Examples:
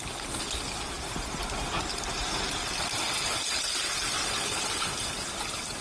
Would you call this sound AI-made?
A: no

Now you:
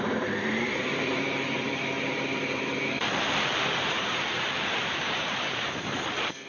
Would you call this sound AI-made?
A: yes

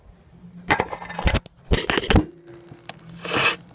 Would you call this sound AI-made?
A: no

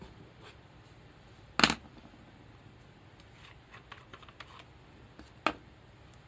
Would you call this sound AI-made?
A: no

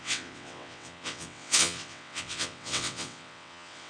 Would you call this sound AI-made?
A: yes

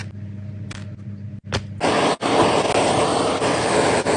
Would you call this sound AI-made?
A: no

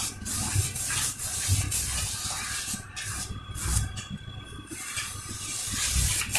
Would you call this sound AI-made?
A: no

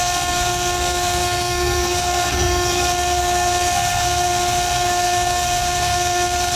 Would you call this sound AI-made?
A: yes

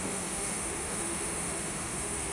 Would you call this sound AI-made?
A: yes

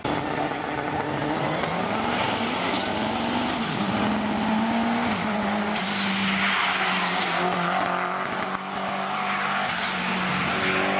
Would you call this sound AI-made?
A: no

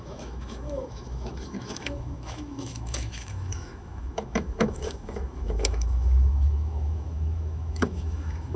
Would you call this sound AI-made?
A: yes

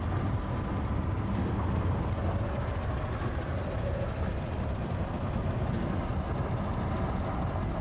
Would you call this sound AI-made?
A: no